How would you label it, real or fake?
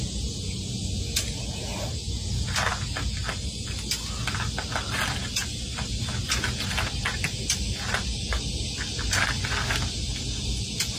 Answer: real